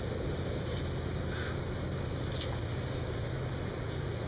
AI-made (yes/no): no